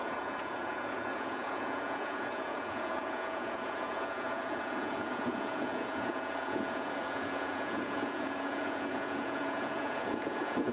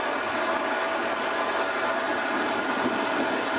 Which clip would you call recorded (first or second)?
second